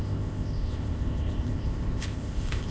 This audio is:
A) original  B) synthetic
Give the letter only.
B